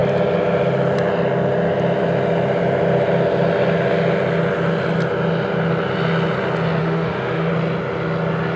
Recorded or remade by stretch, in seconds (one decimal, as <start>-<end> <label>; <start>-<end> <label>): 0.0-6.8 recorded; 6.8-7.5 remade; 7.5-8.6 recorded